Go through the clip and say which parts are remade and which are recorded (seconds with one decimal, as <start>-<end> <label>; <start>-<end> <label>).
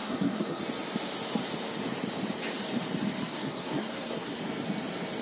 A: 0.0-0.6 remade; 0.6-3.3 recorded; 3.3-4.4 remade; 4.4-5.2 recorded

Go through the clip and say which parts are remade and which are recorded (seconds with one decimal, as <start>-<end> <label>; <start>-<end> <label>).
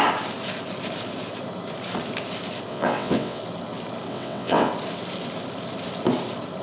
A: 0.0-2.7 recorded; 2.7-3.4 remade; 3.4-4.1 recorded; 4.1-4.7 remade; 4.7-6.6 recorded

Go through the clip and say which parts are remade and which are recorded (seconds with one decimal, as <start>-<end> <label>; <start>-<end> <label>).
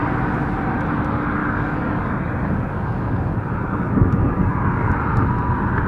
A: 0.0-1.4 recorded; 1.4-4.9 remade; 4.9-5.9 recorded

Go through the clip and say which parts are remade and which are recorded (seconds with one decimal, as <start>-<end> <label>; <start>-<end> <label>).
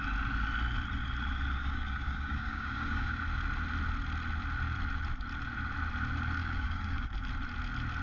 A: 0.0-1.6 recorded; 1.6-3.2 remade; 3.2-6.4 recorded; 6.4-7.1 remade; 7.1-8.0 recorded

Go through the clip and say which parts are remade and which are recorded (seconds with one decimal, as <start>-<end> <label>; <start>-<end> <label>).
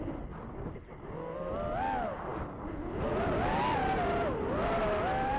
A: 0.0-5.4 recorded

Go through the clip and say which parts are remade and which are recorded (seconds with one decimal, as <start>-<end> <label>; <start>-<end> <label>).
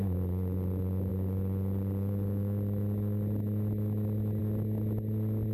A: 0.0-5.5 recorded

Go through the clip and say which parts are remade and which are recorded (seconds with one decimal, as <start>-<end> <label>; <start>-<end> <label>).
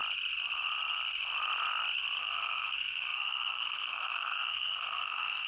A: 0.0-2.2 recorded; 2.2-5.5 remade